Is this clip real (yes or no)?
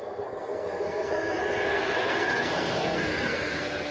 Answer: no